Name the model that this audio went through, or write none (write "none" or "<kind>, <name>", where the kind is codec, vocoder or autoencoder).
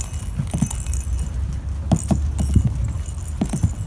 none